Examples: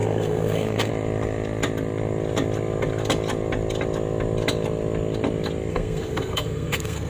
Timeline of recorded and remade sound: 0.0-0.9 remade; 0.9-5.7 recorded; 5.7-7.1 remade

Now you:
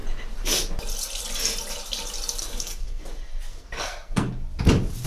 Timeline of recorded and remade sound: 0.0-2.4 recorded; 2.4-3.0 remade; 3.0-3.5 recorded; 3.5-4.3 remade; 4.3-5.1 recorded

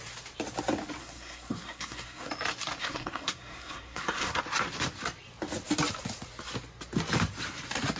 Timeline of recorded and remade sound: 0.0-1.0 recorded; 1.0-2.3 remade; 2.3-2.8 recorded; 2.8-4.4 remade; 4.4-8.0 recorded

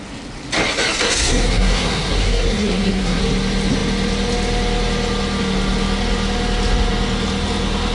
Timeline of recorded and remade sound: 0.0-1.0 recorded; 1.0-3.2 remade; 3.2-7.9 recorded